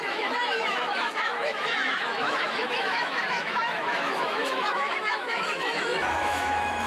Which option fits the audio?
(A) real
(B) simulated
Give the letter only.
B